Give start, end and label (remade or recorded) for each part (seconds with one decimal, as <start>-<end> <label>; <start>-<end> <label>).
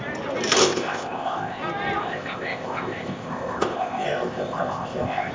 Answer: 0.0-0.6 recorded; 0.6-1.6 remade; 1.6-2.0 recorded; 2.0-5.3 remade